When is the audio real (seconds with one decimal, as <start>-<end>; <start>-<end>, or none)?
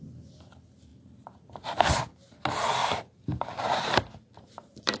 0.0-0.9; 2.0-2.8